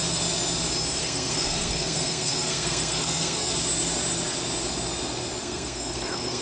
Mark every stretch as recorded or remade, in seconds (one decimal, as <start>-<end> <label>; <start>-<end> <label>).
0.0-1.0 recorded; 1.0-3.5 remade; 3.5-5.4 recorded; 5.4-6.4 remade